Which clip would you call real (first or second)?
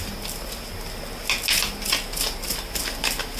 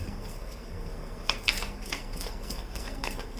first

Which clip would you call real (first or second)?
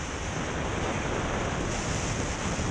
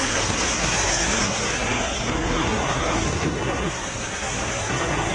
first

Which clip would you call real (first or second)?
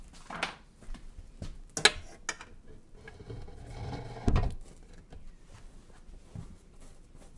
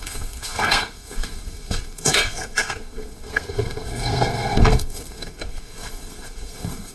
first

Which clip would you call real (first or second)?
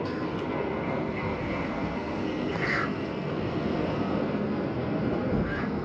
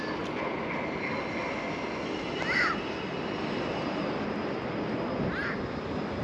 second